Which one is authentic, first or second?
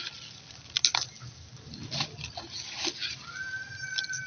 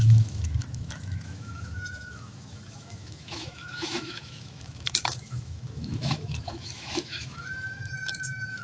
first